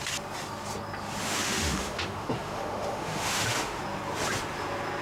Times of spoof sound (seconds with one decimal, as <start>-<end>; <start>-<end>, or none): 1.2-3.8